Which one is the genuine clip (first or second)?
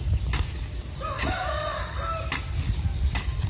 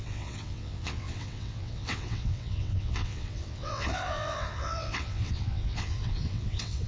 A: first